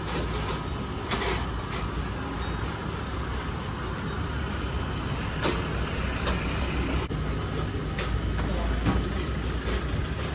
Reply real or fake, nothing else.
real